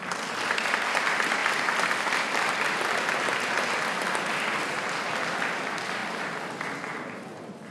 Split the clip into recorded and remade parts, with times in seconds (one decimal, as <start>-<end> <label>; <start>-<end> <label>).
0.0-7.7 recorded

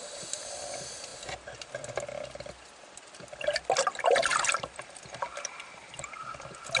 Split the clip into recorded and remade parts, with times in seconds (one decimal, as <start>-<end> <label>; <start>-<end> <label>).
0.0-4.3 recorded; 4.3-6.3 remade; 6.3-6.8 recorded

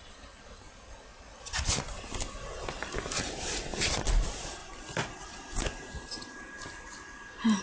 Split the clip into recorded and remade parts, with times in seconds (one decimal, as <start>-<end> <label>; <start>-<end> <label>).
0.0-4.6 recorded; 4.6-7.6 remade

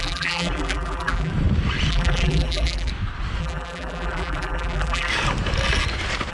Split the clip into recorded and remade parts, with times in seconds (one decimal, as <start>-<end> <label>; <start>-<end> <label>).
0.0-1.3 remade; 1.3-1.9 recorded; 1.9-2.9 remade; 2.9-3.4 recorded; 3.4-5.1 remade; 5.1-6.3 recorded

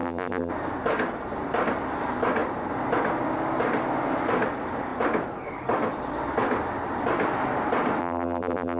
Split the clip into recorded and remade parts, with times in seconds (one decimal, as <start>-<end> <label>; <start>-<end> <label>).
0.0-0.5 remade; 0.5-8.0 recorded; 8.0-8.8 remade

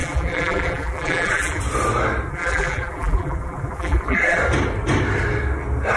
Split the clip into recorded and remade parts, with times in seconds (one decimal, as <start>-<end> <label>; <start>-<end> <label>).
0.0-1.6 remade; 1.6-2.3 recorded; 2.3-4.4 remade; 4.4-6.0 recorded